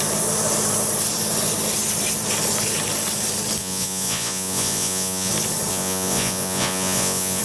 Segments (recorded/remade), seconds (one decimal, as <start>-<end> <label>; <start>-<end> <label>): 0.0-3.6 recorded; 3.6-5.3 remade; 5.3-5.7 recorded; 5.7-7.4 remade